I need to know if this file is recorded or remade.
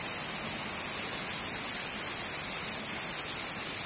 recorded